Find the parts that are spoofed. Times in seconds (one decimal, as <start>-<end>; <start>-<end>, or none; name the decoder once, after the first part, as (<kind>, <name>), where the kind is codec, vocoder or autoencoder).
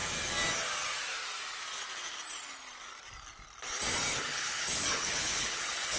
4.1-6.0 (codec, HILCodec)